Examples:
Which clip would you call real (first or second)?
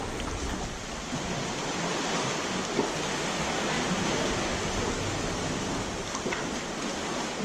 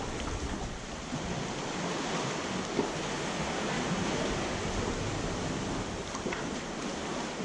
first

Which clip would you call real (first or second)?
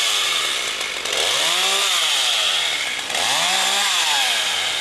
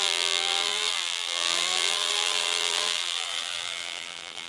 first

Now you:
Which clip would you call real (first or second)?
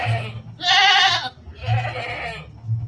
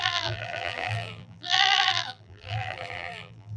first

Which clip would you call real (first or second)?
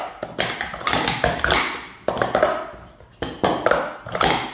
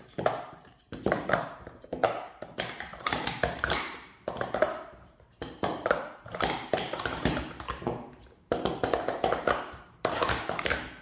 first